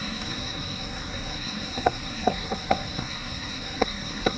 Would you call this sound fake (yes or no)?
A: yes